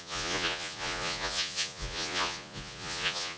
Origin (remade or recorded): remade